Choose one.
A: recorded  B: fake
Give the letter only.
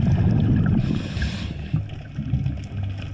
A